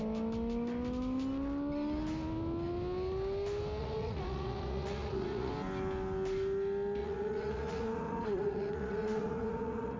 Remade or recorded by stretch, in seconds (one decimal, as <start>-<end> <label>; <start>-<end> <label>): 0.0-3.8 recorded; 3.8-5.5 remade; 5.5-7.0 recorded; 7.0-10.0 remade